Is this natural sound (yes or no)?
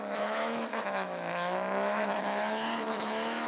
no